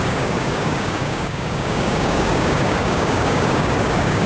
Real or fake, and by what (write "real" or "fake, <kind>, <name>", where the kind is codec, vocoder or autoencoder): fake, codec, DAC